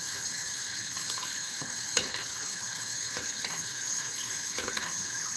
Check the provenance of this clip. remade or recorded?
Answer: remade